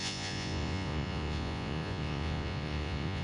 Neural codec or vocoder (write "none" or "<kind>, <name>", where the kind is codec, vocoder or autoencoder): vocoder, Vocos